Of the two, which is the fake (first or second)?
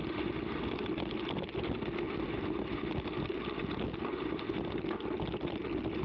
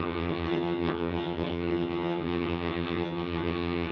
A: second